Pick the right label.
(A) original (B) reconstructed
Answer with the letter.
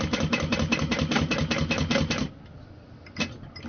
A